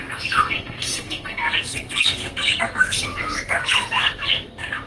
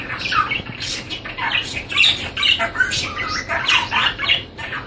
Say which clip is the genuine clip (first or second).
second